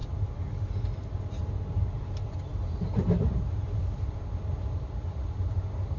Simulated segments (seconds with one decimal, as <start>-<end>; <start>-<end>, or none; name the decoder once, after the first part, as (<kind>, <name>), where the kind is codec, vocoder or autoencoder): none

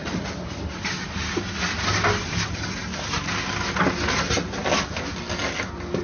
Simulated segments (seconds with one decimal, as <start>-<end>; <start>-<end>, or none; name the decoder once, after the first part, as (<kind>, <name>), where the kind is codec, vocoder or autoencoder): none

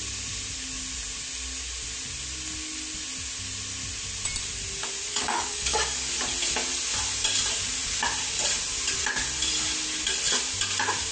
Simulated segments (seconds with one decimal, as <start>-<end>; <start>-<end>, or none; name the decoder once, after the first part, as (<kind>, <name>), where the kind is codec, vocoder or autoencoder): 5.1-6.1 (codec, DAC)

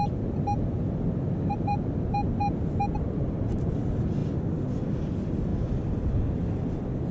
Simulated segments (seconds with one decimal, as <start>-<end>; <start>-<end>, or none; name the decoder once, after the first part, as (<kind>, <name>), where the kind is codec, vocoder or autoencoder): none

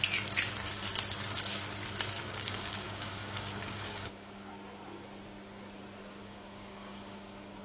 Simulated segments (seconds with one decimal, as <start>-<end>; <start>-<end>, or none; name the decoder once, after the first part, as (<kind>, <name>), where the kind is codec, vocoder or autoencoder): 2.2-4.5 (codec, DAC); 6.2-7.6

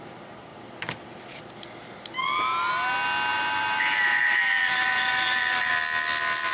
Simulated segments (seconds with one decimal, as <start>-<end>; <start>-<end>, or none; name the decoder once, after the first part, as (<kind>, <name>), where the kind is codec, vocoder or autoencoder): 3.3-5.7 (vocoder, BigVGAN v2)

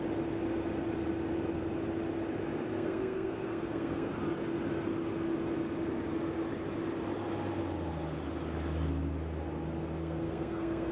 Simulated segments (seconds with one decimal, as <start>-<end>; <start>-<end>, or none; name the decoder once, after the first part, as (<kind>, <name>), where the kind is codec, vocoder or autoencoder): 2.7-4.1 (codec, SNAC); 10.0-10.9